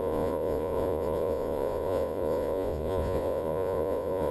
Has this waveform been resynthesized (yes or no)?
yes